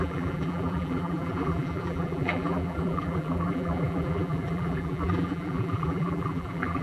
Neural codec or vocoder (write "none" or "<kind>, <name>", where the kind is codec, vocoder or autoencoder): vocoder, BigVGAN v2